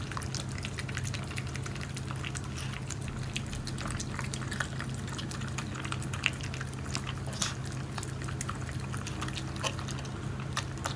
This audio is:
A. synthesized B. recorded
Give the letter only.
B